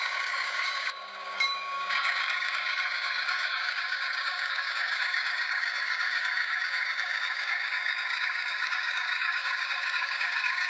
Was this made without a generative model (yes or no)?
no